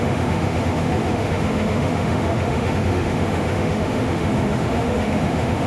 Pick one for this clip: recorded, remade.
remade